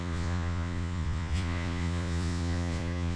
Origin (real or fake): fake